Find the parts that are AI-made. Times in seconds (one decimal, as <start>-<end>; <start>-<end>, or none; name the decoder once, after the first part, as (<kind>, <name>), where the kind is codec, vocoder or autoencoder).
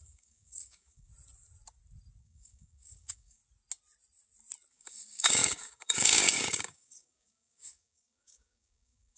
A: 0.0-1.1 (codec, DAC); 2.2-3.4; 4.7-9.2